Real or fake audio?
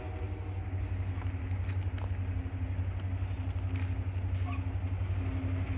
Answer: real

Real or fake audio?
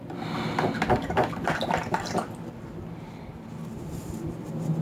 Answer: real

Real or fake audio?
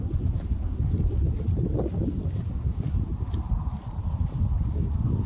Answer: real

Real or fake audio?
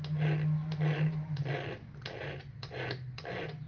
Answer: real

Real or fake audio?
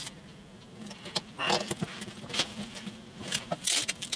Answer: fake